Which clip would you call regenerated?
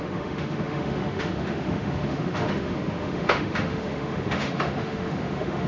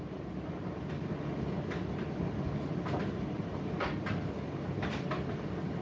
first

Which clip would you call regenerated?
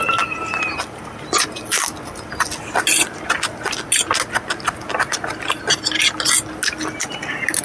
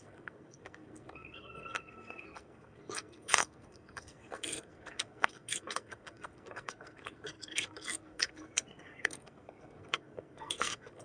second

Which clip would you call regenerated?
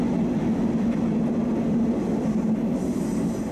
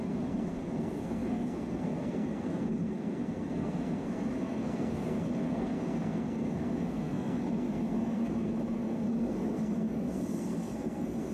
second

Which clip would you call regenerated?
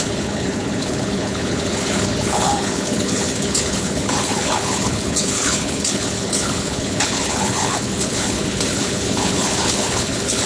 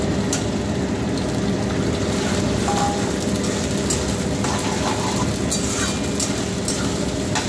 first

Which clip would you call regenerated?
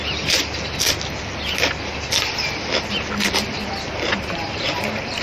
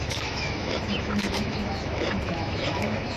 second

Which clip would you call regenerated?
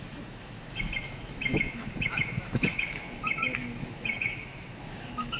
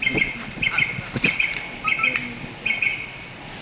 first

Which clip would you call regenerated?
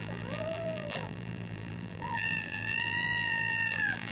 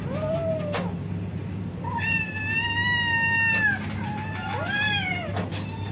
first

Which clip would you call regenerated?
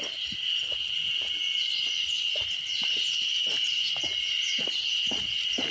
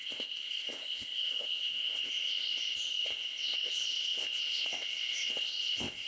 second